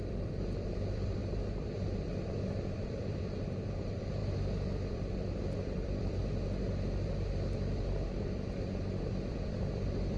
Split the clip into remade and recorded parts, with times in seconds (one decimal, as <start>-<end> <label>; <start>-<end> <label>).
0.0-6.2 remade; 6.2-9.3 recorded; 9.3-10.2 remade